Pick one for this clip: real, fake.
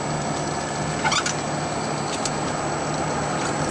real